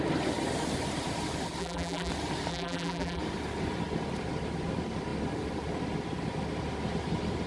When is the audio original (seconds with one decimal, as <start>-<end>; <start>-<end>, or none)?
0.0-1.6; 2.1-2.5; 3.2-7.5